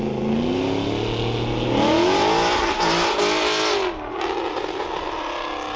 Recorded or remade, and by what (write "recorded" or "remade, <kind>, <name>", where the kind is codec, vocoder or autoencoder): recorded